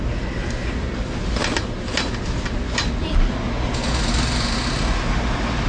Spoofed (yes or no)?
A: no